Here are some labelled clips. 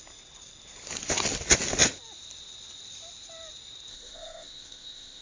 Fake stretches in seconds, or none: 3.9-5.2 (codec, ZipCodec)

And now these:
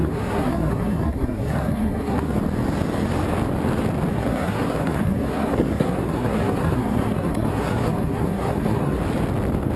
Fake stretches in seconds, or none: 0.0-2.4 (codec, SNAC); 4.1-9.0

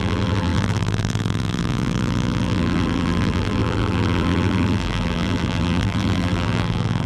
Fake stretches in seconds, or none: 0.0-7.1 (vocoder, BigVGAN v2)

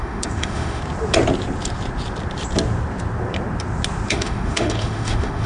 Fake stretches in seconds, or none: 0.0-0.8 (autoencoder, DAC-VAE); 4.1-5.5

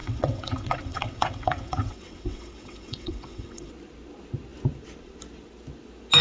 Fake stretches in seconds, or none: 0.0-3.7 (vocoder, WaveNeXt)

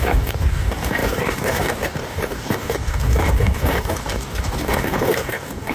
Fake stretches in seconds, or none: 0.0-5.7 (codec, DAC)